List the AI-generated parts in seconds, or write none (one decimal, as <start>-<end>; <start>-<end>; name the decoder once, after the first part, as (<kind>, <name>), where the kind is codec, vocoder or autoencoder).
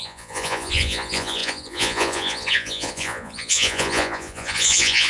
0.0-5.1 (vocoder, Vocos)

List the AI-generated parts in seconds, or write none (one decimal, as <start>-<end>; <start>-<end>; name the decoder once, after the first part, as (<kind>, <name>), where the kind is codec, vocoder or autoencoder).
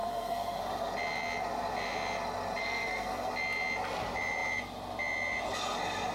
0.0-0.6 (codec, SNAC); 2.6-3.3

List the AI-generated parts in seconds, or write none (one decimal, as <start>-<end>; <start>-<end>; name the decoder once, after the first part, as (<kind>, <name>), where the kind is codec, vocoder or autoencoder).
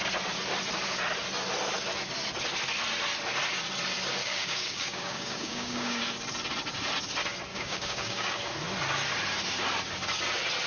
4.2-6.0 (codec, DAC); 7.5-8.4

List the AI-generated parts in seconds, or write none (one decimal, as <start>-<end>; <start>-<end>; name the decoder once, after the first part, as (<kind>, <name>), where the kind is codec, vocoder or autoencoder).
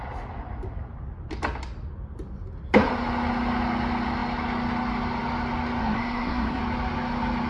5.8-6.6 (codec, SNAC)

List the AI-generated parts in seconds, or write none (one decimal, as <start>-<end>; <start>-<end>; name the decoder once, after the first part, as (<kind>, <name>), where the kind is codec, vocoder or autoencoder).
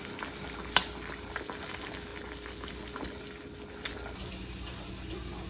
none